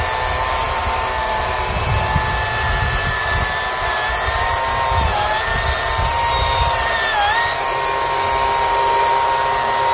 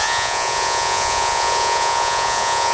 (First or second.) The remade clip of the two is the second